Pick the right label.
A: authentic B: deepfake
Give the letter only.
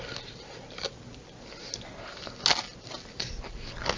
A